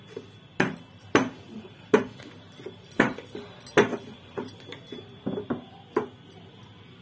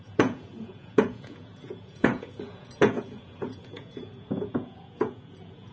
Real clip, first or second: first